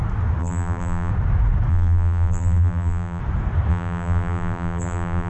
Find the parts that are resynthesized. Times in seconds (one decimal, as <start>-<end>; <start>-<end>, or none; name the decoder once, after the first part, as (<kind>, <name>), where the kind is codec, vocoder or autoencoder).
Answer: 0.4-1.1 (vocoder, BigVGAN v2); 1.7-3.2; 3.7-5.3